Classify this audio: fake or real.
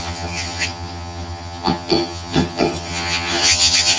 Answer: fake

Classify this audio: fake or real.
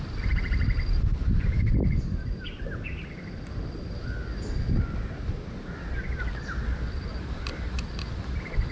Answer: real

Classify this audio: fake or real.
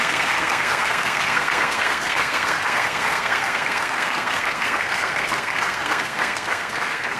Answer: fake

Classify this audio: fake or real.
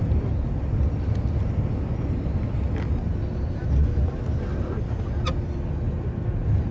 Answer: real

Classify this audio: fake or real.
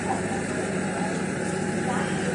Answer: fake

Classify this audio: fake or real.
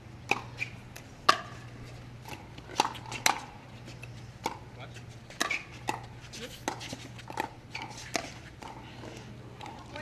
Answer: real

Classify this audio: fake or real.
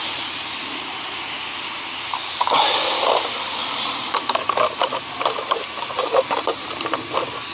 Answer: real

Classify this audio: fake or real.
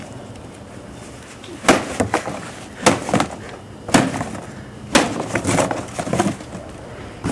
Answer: real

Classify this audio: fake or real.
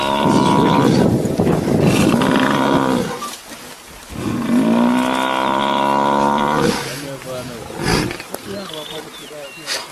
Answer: real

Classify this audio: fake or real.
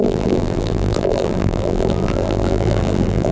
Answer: fake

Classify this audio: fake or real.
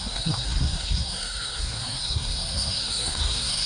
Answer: fake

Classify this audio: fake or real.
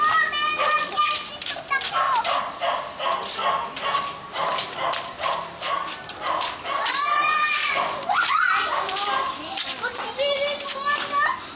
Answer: real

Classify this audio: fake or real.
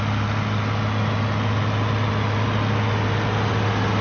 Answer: real